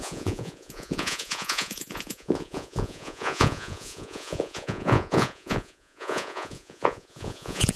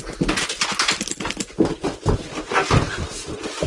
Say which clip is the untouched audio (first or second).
second